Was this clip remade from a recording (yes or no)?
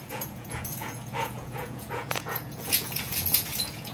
yes